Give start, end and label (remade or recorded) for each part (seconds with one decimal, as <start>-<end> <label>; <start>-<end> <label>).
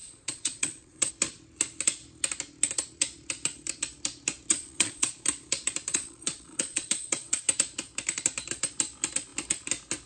0.0-1.1 remade; 1.1-4.5 recorded; 4.5-5.1 remade; 5.1-5.9 recorded; 5.9-7.4 remade; 7.4-10.1 recorded